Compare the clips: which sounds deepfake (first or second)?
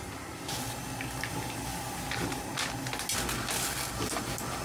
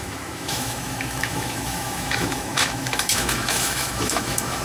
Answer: second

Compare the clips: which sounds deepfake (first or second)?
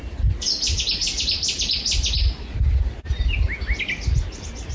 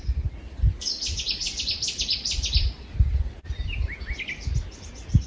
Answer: second